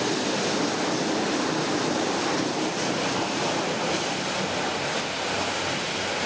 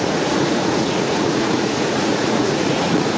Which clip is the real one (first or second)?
first